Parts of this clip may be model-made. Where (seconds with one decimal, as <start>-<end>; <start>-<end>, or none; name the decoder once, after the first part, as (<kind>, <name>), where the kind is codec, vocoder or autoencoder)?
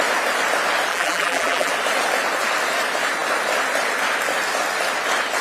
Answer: 0.9-1.7 (vocoder, BigVGAN v2)